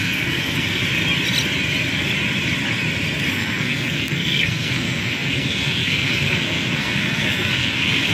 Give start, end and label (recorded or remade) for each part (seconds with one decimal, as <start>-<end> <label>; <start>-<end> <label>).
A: 0.0-0.8 remade; 0.8-3.3 recorded; 3.3-8.1 remade